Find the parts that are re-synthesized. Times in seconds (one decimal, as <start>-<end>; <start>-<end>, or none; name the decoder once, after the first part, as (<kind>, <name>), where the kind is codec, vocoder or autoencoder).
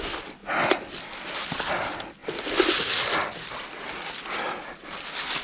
none